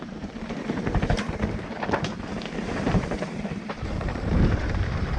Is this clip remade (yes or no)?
yes